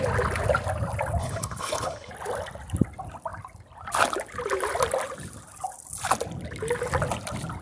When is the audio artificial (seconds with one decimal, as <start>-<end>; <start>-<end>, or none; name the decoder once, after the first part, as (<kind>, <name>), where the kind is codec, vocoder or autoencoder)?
1.2-2.1 (codec, HILCodec)